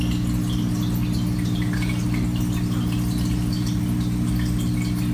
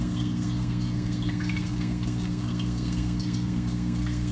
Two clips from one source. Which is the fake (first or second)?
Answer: second